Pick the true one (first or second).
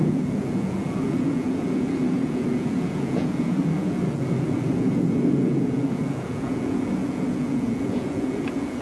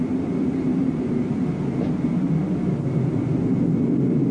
second